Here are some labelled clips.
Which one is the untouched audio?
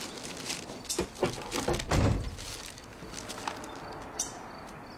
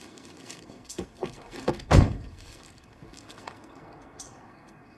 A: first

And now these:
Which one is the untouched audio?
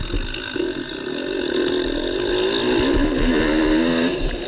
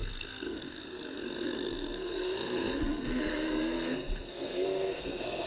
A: first